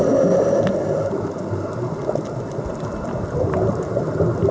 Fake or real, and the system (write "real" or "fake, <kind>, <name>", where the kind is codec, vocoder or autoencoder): real